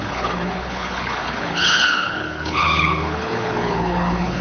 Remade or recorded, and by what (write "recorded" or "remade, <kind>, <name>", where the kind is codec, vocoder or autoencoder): remade, codec, HILCodec